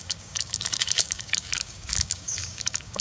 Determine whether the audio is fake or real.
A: fake